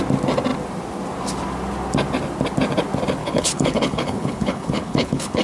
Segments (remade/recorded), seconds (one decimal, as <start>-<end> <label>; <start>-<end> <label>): 0.0-3.2 recorded; 3.2-5.4 remade